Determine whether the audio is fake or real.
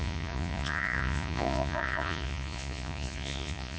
fake